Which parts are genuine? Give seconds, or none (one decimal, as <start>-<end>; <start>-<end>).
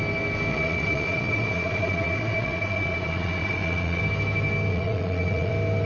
0.0-0.5; 4.0-4.7; 5.5-5.9